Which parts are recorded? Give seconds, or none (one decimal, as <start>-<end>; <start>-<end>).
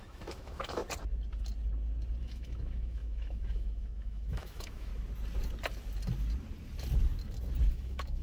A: 0.8-2.2; 4.9-7.7